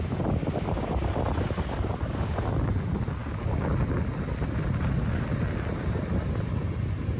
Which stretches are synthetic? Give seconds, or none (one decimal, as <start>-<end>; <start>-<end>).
none